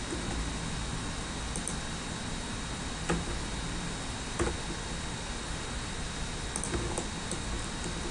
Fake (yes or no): no